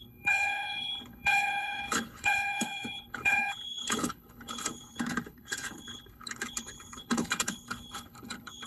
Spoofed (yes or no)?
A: yes